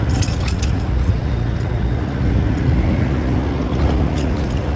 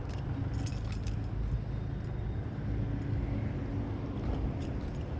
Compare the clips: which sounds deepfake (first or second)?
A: first